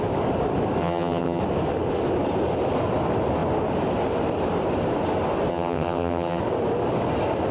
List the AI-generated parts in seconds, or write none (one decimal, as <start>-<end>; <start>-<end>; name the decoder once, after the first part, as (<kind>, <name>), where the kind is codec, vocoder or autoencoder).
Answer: 0.8-1.4 (vocoder, HiFi-GAN); 5.5-6.4